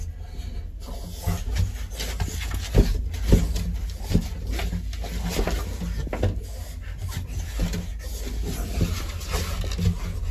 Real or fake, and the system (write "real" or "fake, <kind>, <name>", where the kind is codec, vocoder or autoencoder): real